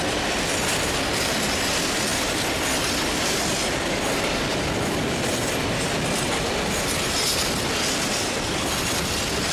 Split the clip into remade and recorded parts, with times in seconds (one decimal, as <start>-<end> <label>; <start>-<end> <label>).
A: 0.0-9.5 recorded

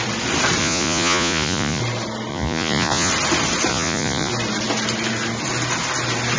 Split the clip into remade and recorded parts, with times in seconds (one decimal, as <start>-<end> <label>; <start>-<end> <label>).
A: 0.0-0.6 recorded; 0.6-1.8 remade; 1.8-2.3 recorded; 2.3-3.1 remade; 3.1-3.7 recorded; 3.7-4.3 remade; 4.3-6.4 recorded